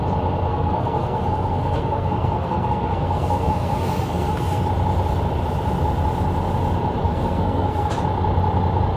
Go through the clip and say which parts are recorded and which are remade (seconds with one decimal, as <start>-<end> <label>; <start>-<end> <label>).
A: 0.0-0.5 recorded; 0.5-4.6 remade; 4.6-7.0 recorded; 7.0-7.9 remade; 7.9-9.0 recorded

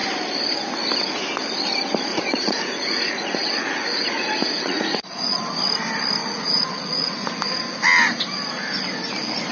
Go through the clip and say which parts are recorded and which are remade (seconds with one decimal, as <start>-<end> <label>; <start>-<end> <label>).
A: 0.0-2.1 recorded; 2.1-5.4 remade; 5.4-6.2 recorded; 6.2-7.3 remade; 7.3-9.5 recorded

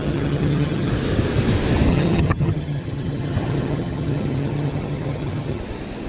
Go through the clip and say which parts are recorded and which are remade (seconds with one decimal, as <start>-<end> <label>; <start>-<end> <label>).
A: 0.0-0.9 remade; 0.9-1.9 recorded; 1.9-5.6 remade; 5.6-6.1 recorded

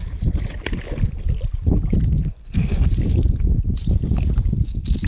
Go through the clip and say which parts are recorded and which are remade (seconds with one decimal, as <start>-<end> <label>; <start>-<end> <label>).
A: 0.0-2.3 recorded; 2.3-2.9 remade; 2.9-5.1 recorded

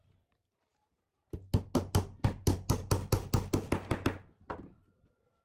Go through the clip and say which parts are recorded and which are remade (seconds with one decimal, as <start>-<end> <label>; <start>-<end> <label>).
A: 0.0-5.4 recorded

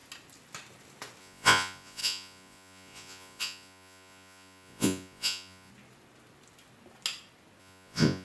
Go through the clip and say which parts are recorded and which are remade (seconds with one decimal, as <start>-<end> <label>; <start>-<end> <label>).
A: 0.0-1.2 recorded; 1.2-5.7 remade; 5.7-7.6 recorded; 7.6-8.2 remade